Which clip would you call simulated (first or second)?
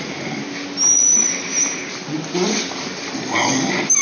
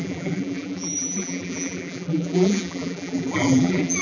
second